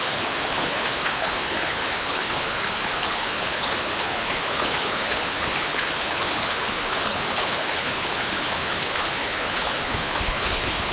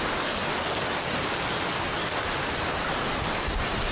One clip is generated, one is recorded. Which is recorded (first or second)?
second